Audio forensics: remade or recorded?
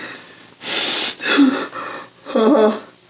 recorded